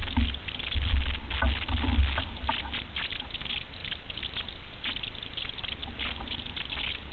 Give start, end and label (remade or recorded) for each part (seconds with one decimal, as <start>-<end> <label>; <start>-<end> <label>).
0.0-7.1 recorded